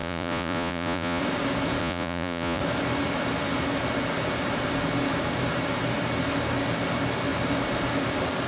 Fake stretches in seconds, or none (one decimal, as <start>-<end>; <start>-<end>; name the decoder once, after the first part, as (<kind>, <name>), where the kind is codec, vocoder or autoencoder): 0.0-1.2 (vocoder, Vocos); 1.8-2.6